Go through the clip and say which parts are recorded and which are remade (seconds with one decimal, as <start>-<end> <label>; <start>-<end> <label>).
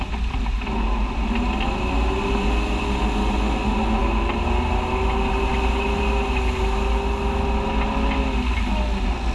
0.0-9.3 recorded